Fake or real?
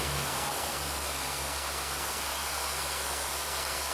fake